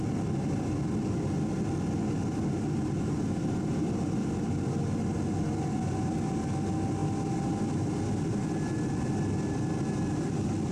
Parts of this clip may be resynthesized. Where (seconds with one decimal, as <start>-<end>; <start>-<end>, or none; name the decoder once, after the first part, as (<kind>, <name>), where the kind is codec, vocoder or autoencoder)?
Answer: none